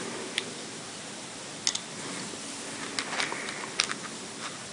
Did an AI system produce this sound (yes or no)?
no